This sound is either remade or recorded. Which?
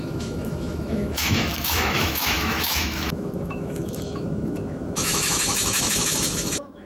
remade